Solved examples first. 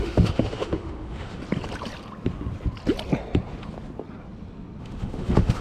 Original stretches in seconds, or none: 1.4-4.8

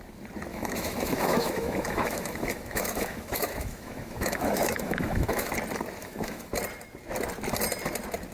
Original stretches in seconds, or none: 0.0-0.5; 5.5-6.0; 6.5-8.3

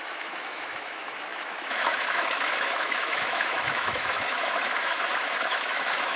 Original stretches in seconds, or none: none

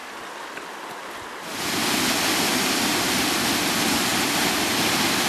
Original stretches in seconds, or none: 0.0-5.3

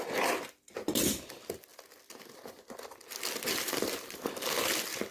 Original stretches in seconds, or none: 0.0-5.1

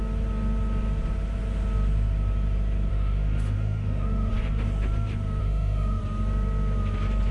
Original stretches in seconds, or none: 0.0-2.9; 4.3-5.4; 6.0-7.3